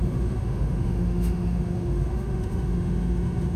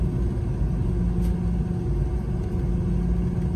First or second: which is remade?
first